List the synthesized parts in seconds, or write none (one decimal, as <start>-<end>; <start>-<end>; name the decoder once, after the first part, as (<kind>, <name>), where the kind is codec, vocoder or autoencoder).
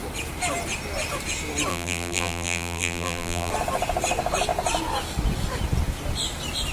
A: 1.7-3.5 (vocoder, BigVGAN v2)